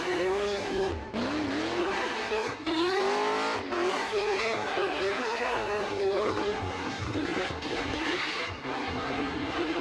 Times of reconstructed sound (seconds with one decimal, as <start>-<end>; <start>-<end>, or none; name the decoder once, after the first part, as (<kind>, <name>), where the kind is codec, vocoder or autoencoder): 0.0-0.9 (codec, SNAC); 1.8-3.0; 3.9-9.8